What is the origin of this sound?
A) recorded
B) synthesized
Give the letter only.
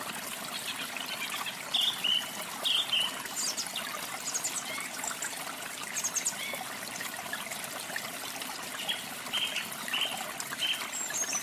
A